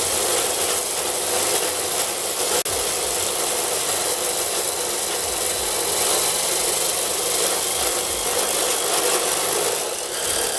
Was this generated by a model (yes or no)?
no